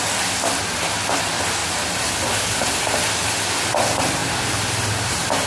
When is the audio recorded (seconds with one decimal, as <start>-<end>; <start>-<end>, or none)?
0.0-1.6; 2.1-5.5